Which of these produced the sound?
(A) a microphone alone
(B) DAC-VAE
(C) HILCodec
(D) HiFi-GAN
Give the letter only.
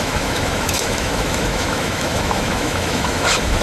B